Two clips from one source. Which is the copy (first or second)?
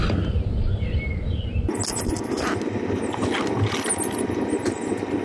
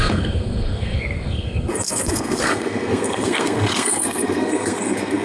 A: second